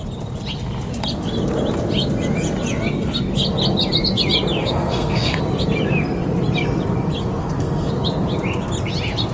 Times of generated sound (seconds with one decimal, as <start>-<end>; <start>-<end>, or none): 4.6-5.4; 7.4-7.9

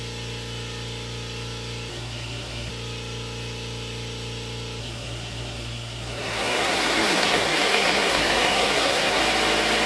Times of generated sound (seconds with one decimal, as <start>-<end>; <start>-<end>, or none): 1.9-2.7; 4.8-9.2

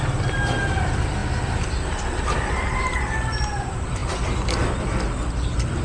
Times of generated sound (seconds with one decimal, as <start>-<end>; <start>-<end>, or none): none

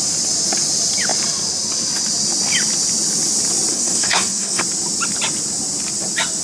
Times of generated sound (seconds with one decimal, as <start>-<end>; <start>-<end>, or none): 3.7-4.6

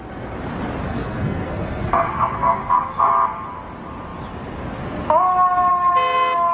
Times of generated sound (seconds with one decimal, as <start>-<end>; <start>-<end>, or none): 0.9-3.1

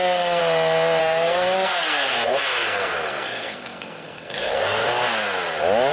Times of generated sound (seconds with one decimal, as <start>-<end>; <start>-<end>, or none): 0.0-0.4; 1.0-5.0

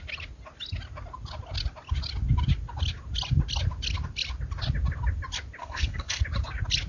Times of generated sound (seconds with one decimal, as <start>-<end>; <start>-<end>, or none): 5.6-6.2